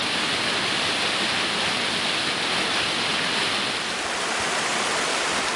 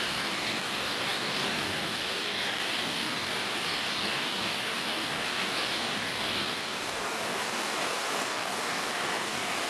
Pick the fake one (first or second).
second